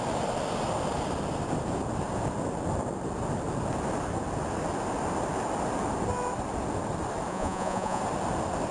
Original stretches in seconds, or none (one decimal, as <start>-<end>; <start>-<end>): 0.0-7.3; 8.0-8.7